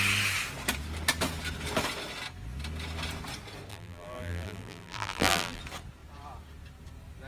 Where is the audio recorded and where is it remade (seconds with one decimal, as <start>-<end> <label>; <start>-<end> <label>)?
0.0-3.7 recorded; 3.7-5.6 remade; 5.6-7.3 recorded